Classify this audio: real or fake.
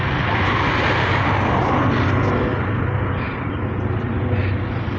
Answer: real